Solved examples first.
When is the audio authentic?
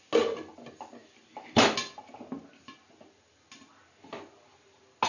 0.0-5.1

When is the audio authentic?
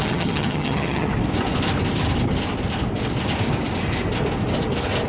1.1-5.1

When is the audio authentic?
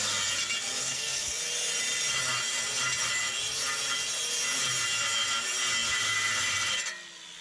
0.0-0.8; 1.4-7.4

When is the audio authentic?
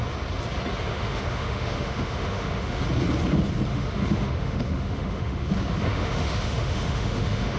0.0-0.9; 2.8-3.7; 5.5-5.9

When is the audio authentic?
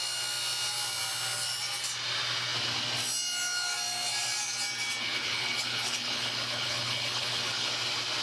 0.0-5.0; 7.7-8.2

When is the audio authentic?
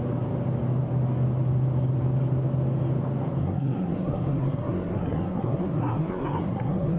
0.0-3.4